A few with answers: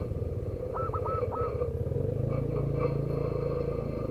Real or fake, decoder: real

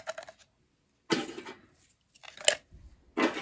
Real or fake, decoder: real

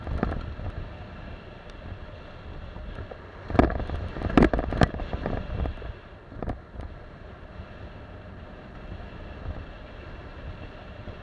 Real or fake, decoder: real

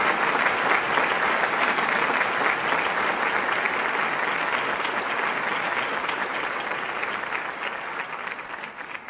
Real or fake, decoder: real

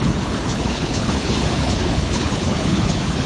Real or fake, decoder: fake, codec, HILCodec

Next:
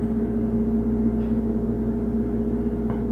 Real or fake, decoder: real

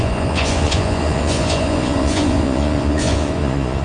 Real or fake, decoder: fake, vocoder, Vocos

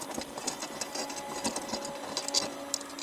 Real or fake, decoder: real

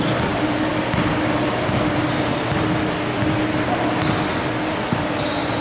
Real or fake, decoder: real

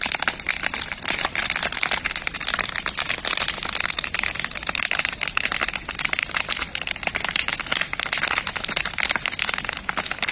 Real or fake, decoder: real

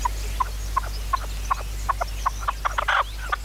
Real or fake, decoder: real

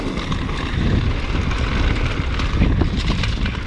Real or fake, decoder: real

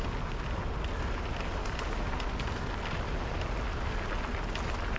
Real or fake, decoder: real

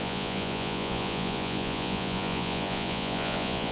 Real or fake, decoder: fake, vocoder, Vocos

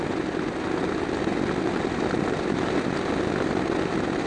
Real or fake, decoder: real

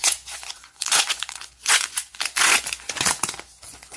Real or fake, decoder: fake, vocoder, Vocos